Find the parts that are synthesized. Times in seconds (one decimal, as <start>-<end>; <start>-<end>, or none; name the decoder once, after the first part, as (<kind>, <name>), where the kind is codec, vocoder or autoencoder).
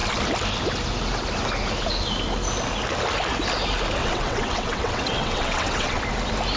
4.0-6.0 (vocoder, WaveNeXt)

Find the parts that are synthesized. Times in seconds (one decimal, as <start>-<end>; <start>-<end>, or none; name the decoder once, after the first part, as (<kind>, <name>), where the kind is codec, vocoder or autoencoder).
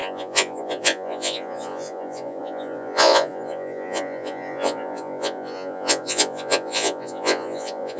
0.0-8.0 (vocoder, Vocos)